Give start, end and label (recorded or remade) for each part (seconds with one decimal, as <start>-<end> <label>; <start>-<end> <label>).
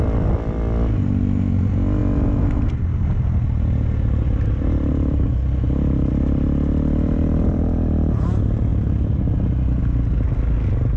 0.0-11.0 recorded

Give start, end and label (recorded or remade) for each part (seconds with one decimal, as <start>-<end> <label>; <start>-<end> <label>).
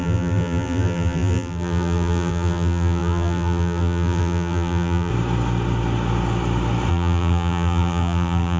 0.0-5.1 remade; 5.1-6.9 recorded; 6.9-8.6 remade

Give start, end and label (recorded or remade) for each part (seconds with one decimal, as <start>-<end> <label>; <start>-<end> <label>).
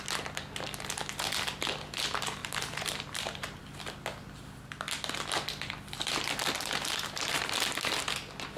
0.0-2.4 recorded; 2.4-3.6 remade; 3.6-8.6 recorded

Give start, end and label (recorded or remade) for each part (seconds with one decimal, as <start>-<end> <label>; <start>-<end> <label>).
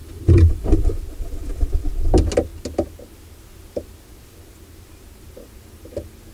0.0-0.9 remade; 0.9-6.3 recorded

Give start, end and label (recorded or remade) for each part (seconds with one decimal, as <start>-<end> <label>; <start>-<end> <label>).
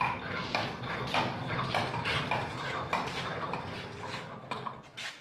0.0-5.2 recorded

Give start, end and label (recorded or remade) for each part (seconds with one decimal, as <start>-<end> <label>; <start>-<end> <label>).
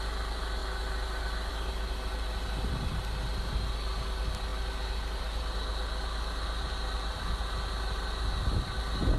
0.0-9.2 recorded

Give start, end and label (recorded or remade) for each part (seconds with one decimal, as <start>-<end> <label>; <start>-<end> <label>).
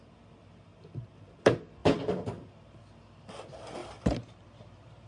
0.0-0.7 recorded; 0.7-1.4 remade; 1.4-1.8 recorded; 1.8-2.3 remade; 2.3-3.8 recorded; 3.8-5.1 remade